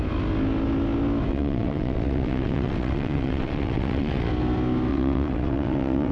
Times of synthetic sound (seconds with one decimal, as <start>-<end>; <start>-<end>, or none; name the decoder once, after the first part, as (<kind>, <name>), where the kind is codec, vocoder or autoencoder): 1.3-4.3 (vocoder, WaveNeXt); 4.9-6.1